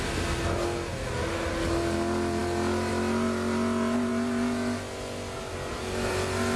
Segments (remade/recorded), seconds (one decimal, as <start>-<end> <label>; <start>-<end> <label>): 0.0-6.6 recorded